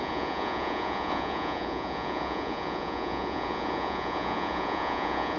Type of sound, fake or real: fake